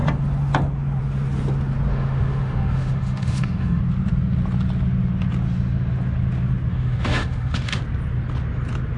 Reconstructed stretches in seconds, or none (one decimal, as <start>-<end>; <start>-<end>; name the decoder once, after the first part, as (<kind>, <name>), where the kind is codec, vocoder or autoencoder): 1.9-3.8 (autoencoder, DAC-VAE); 6.7-7.8